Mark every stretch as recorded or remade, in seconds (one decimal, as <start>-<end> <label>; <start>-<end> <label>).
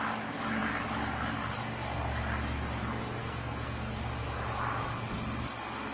0.0-3.2 recorded; 3.2-3.9 remade; 3.9-5.9 recorded